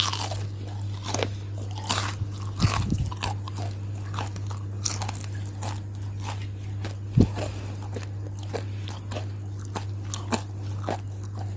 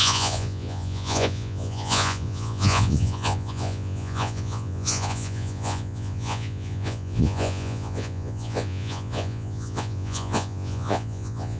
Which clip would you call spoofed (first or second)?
second